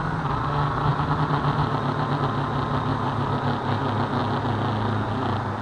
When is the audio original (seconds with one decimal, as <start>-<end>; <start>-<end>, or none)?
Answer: 0.0-0.9; 2.1-2.9; 3.8-5.6